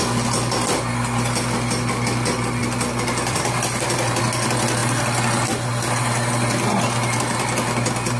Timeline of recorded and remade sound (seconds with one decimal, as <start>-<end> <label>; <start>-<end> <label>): 0.0-2.6 recorded; 2.6-4.2 remade; 4.2-8.2 recorded